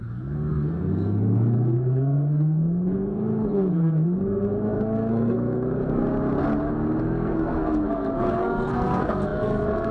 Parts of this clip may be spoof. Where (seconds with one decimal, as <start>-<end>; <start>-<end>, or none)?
0.0-6.0; 7.0-9.9